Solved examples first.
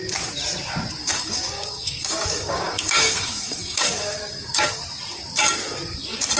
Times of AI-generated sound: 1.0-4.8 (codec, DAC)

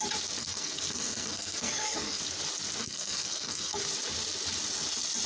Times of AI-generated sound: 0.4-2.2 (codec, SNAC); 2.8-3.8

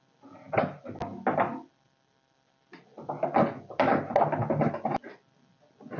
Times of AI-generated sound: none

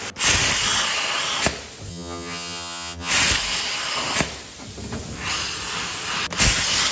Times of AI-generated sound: 1.9-3.1 (vocoder, HiFi-GAN)

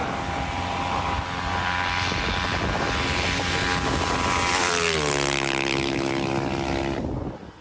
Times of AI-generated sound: none